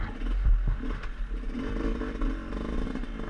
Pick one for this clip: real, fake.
real